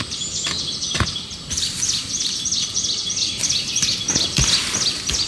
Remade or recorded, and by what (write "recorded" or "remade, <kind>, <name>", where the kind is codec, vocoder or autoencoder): recorded